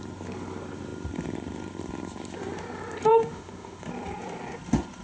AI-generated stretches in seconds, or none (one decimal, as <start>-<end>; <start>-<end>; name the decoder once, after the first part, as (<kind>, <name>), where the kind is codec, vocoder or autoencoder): 3.1-3.8 (autoencoder, DAC-VAE)